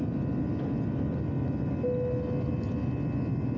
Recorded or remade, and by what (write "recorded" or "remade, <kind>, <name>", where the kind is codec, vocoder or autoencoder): recorded